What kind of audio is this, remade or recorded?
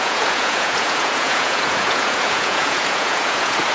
remade